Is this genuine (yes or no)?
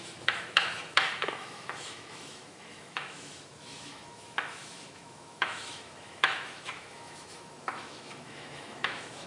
no